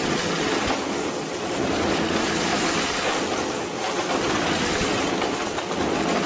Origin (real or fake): fake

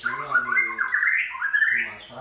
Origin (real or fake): real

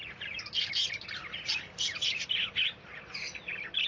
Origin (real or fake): real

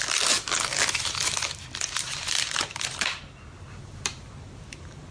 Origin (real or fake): real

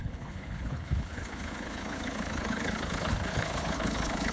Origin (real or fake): fake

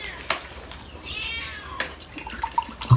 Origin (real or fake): real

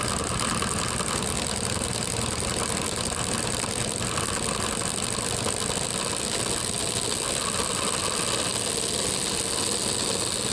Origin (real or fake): real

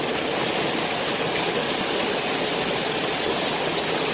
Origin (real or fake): real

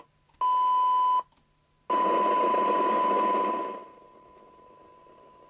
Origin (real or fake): real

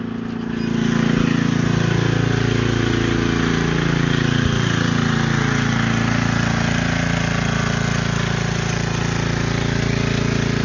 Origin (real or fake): real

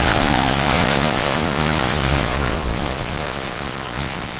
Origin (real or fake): fake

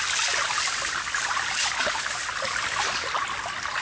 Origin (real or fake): real